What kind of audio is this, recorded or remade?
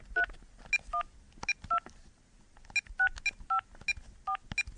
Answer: recorded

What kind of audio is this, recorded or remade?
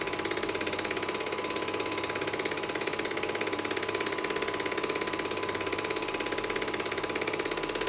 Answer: recorded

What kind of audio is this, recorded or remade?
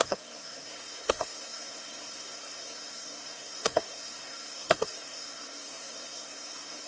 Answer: remade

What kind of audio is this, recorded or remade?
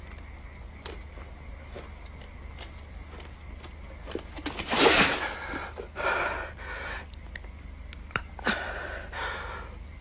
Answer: recorded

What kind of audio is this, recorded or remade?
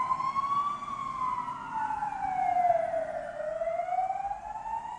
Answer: recorded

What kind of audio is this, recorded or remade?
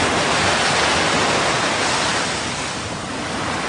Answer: recorded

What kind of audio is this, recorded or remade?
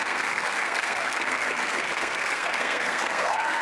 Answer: remade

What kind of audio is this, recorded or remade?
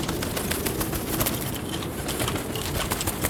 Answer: recorded